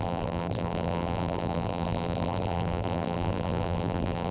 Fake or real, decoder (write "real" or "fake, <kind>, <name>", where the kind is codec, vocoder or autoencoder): fake, vocoder, BigVGAN v2